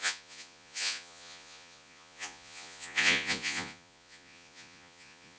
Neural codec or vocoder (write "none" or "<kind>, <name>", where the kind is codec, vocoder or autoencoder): vocoder, Vocos